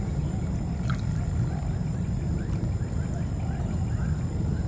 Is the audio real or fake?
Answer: real